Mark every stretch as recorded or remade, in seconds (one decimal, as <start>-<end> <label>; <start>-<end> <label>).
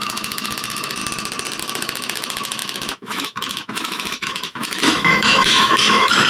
0.0-1.0 remade; 1.0-1.6 recorded; 1.6-6.3 remade